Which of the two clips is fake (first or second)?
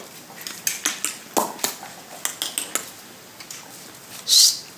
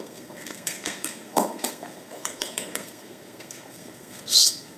second